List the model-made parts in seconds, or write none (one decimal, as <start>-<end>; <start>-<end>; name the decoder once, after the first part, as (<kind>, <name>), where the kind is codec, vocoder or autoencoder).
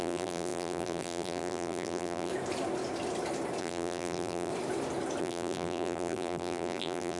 0.0-2.3 (vocoder, BigVGAN v2); 3.6-4.5; 5.2-7.2